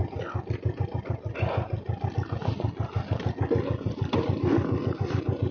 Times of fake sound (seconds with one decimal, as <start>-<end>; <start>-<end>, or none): none

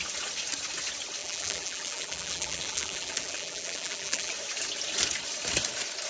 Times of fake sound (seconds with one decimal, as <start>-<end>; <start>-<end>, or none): 1.2-4.3

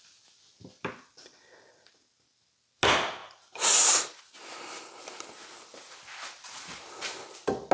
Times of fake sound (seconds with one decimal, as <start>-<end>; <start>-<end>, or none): none

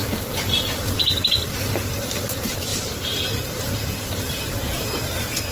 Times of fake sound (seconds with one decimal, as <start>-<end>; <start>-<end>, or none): 1.7-5.5

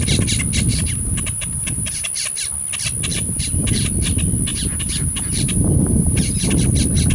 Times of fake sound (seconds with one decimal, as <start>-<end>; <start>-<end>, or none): 0.7-2.1; 3.1-3.9; 4.5-6.6

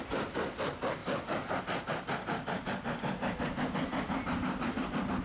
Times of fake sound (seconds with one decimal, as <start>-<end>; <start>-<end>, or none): none

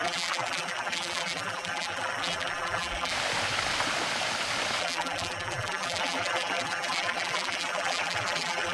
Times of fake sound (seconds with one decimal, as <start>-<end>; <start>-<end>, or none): 0.0-3.1; 4.8-8.7

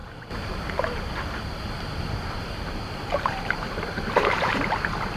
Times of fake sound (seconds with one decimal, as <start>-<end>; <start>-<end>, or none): 0.0-5.2